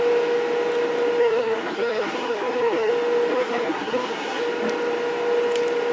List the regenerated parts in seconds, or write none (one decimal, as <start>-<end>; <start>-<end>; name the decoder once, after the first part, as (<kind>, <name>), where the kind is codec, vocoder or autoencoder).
1.2-2.9 (codec, SNAC); 3.3-4.4